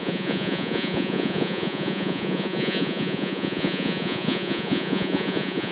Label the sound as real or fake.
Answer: fake